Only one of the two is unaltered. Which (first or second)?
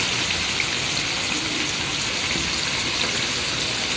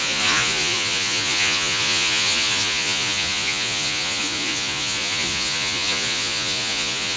first